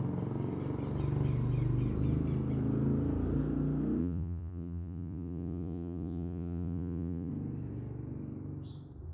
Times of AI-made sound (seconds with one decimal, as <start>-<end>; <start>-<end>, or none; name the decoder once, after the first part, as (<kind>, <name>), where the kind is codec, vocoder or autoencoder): 4.0-7.3 (vocoder, Vocos)